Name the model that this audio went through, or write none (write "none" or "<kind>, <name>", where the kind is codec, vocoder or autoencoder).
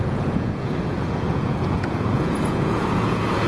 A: vocoder, Vocos